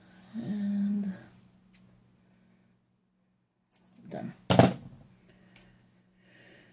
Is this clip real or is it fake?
real